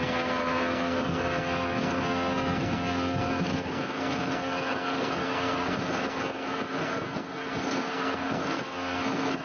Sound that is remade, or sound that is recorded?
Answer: remade